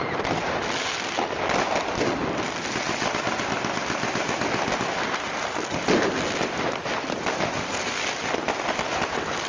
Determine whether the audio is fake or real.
real